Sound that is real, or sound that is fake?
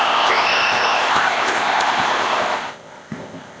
fake